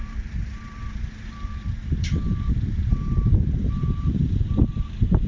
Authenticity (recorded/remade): remade